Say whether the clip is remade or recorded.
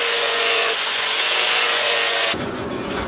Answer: remade